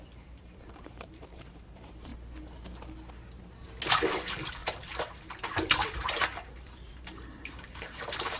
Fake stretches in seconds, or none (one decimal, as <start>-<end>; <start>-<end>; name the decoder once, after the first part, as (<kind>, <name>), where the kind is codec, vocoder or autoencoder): 0.0-2.1 (vocoder, BigVGAN v2); 3.9-8.4